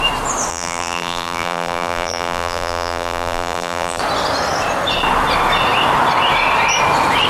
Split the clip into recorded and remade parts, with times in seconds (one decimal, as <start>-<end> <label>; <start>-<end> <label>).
0.0-0.5 recorded; 0.5-4.0 remade; 4.0-7.3 recorded